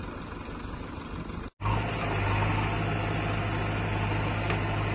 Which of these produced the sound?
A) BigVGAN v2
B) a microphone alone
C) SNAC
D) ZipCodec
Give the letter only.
B